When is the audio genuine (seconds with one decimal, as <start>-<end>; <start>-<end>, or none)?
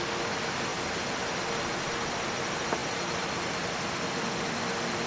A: 0.0-5.1